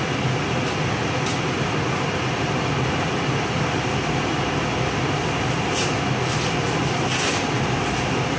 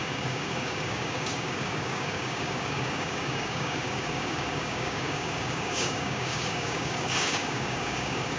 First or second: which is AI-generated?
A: second